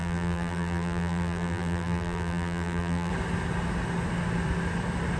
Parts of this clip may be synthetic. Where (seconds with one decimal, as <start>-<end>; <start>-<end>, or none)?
0.0-3.1